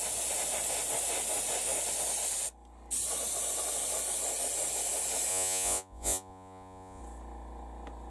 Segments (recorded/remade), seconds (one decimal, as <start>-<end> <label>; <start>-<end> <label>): 0.0-5.3 recorded; 5.3-7.0 remade; 7.0-8.1 recorded

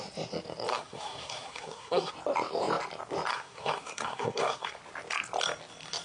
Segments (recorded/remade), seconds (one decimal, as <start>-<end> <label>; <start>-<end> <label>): 0.0-0.7 recorded; 0.7-2.1 remade; 2.1-3.3 recorded; 3.3-4.8 remade; 4.8-6.0 recorded

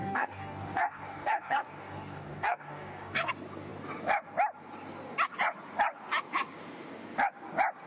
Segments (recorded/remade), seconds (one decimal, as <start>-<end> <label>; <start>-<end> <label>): 0.0-3.3 remade; 3.3-7.9 recorded

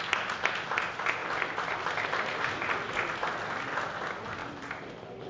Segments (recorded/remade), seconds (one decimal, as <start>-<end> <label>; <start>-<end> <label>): 0.0-5.3 recorded

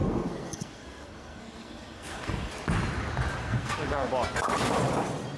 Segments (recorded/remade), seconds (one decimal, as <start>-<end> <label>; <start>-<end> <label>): 0.0-2.5 remade; 2.5-3.4 recorded; 3.4-4.1 remade; 4.1-5.4 recorded

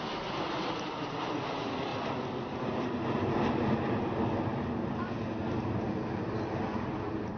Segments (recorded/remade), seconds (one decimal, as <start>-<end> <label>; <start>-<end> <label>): 0.0-7.4 recorded

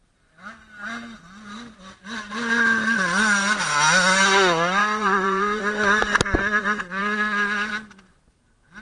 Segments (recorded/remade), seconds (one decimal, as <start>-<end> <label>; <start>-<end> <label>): 0.0-4.8 recorded; 4.8-5.6 remade; 5.6-8.8 recorded